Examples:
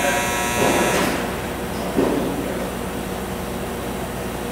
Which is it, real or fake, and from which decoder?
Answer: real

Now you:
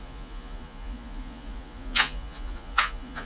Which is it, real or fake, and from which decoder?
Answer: fake, vocoder, Vocos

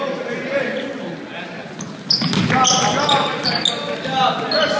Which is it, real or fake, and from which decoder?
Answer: real